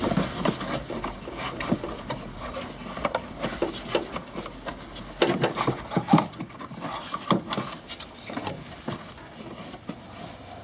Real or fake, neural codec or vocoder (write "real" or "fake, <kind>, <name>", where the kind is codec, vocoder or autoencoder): real